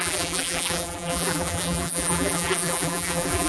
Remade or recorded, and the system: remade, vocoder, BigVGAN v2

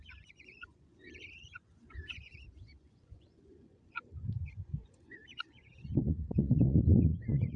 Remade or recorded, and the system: remade, vocoder, Vocos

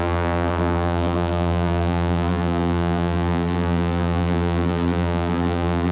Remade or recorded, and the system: remade, vocoder, BigVGAN v2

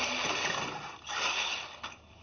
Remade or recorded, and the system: recorded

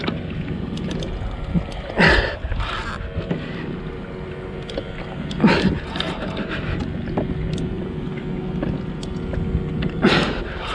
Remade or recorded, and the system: recorded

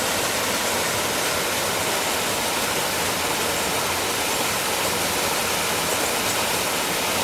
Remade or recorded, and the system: recorded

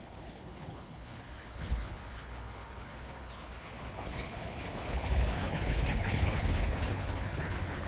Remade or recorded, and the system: remade, codec, HILCodec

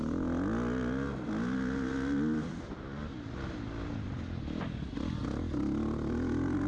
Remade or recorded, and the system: recorded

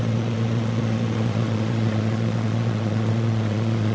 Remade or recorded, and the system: remade, vocoder, Vocos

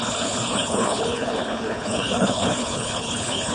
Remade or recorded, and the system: remade, codec, HILCodec